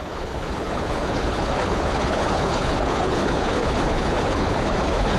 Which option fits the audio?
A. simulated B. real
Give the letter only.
A